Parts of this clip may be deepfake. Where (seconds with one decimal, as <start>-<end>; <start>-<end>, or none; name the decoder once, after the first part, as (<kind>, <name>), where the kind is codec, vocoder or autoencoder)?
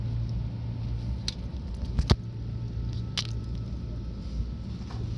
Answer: none